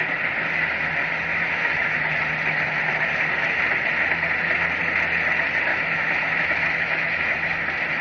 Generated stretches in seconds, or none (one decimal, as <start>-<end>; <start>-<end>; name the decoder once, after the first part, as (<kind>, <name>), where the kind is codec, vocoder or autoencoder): 1.3-2.0 (autoencoder, DAC-VAE); 5.7-7.6